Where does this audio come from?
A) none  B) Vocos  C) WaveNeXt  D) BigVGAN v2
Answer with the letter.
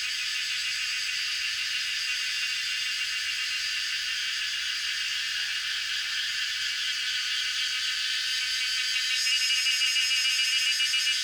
A